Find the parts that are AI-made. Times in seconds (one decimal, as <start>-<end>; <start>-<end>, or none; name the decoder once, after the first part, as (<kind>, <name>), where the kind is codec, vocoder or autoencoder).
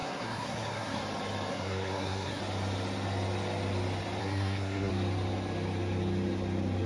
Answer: 0.0-1.0 (codec, SNAC); 1.5-2.4; 4.2-4.9